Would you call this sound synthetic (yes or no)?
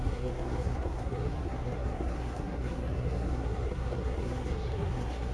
yes